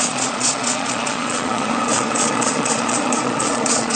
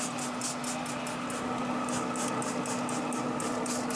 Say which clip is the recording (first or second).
second